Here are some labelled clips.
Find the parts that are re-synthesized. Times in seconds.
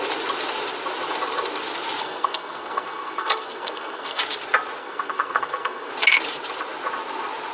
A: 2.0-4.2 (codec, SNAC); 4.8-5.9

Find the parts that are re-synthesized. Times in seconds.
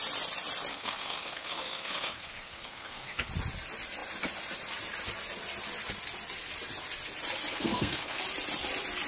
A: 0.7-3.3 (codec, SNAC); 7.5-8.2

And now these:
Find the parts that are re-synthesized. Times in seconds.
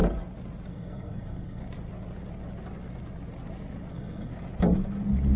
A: 0.7-1.6 (codec, SNAC); 3.9-4.3